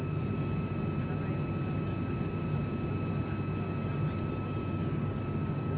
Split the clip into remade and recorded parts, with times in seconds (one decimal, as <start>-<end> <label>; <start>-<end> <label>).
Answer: 0.0-4.6 recorded; 4.6-5.8 remade

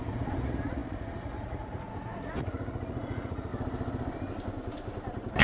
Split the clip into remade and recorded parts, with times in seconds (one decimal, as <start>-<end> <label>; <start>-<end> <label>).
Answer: 0.0-3.5 remade; 3.5-5.4 recorded

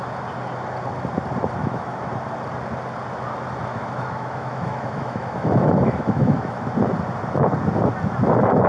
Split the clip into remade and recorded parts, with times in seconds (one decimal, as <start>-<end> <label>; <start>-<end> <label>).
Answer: 0.0-1.6 recorded; 1.6-2.1 remade; 2.1-3.7 recorded; 3.7-6.7 remade; 6.7-8.7 recorded

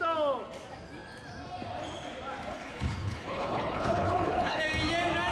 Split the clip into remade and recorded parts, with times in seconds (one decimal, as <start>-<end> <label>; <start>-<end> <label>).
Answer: 0.0-2.5 recorded; 2.5-4.6 remade; 4.6-5.3 recorded

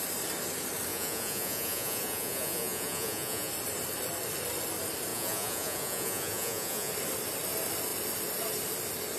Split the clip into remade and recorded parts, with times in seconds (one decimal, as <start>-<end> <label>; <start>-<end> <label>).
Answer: 0.0-0.9 recorded; 0.9-3.5 remade; 3.5-5.1 recorded; 5.1-6.9 remade; 6.9-9.2 recorded

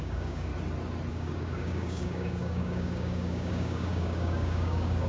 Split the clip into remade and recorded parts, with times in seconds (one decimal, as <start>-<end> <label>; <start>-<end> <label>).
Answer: 0.0-0.5 remade; 0.5-1.1 recorded; 1.1-5.1 remade

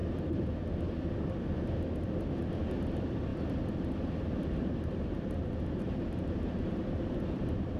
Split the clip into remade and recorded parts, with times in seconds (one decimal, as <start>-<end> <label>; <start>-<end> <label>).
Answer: 0.0-3.3 recorded; 3.3-7.8 remade

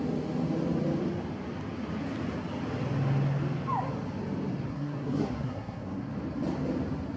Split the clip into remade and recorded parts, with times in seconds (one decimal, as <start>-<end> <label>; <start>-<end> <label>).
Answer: 0.0-4.7 recorded; 4.7-6.1 remade; 6.1-7.2 recorded